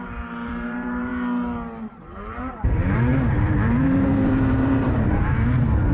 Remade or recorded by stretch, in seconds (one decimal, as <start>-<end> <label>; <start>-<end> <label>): 0.0-1.1 remade; 1.1-1.8 recorded; 1.8-5.9 remade